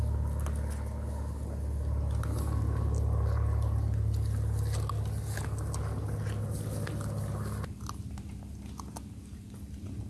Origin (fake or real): real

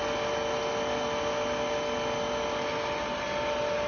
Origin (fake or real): real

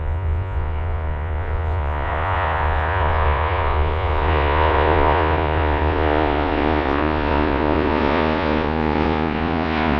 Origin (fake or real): fake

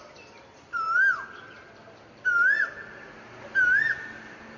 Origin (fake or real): real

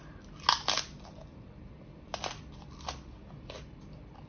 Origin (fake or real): real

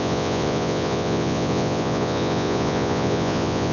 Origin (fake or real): fake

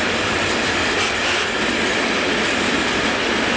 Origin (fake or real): real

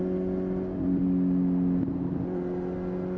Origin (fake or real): real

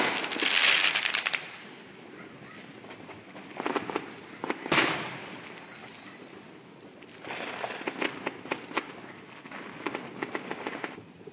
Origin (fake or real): real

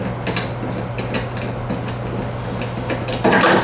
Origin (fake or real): real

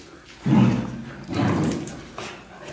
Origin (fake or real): real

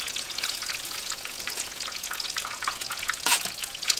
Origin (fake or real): fake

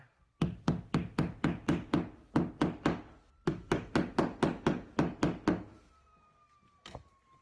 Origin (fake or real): real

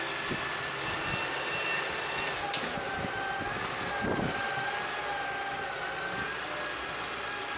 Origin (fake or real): real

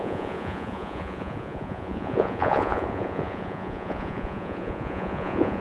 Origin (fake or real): fake